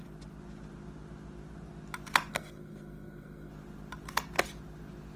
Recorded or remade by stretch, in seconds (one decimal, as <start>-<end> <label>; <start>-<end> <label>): 0.0-2.3 recorded; 2.3-3.5 remade; 3.5-5.2 recorded